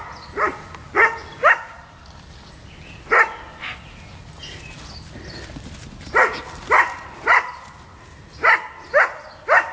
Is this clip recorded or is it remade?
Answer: recorded